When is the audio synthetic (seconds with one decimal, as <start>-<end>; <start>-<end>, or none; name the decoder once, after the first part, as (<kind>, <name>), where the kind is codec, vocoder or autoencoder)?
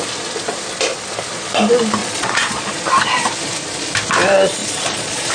2.0-2.7 (vocoder, Vocos); 4.6-5.3